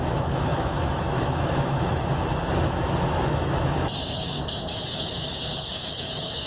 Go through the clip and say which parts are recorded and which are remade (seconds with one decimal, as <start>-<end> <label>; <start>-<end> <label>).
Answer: 0.0-6.5 remade